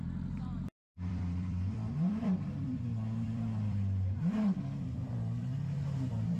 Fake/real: fake